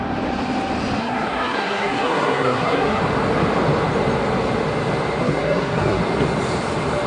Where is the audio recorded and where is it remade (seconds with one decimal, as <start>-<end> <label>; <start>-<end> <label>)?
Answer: 0.0-1.0 recorded; 1.0-3.0 remade; 3.0-5.2 recorded; 5.2-6.0 remade; 6.0-7.1 recorded